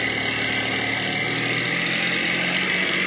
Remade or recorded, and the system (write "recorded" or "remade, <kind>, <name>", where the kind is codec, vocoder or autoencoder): recorded